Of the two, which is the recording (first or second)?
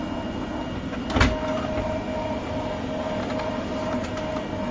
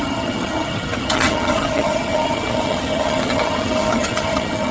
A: first